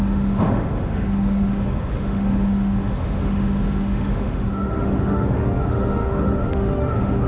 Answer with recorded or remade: remade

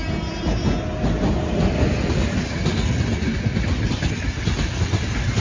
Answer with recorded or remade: recorded